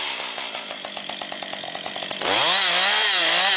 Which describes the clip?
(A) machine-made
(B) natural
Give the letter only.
B